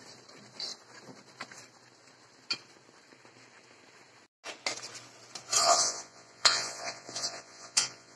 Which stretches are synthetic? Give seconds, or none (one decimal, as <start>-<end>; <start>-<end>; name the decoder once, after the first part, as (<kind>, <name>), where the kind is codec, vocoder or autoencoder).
5.6-8.2 (vocoder, Vocos)